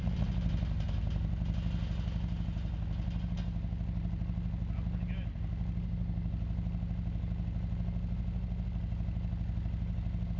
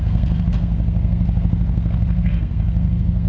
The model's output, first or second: second